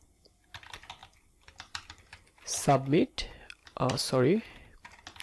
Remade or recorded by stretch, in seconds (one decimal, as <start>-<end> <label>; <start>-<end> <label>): 0.0-1.0 recorded; 1.0-2.6 remade; 2.6-3.6 recorded; 3.6-4.4 remade; 4.4-5.2 recorded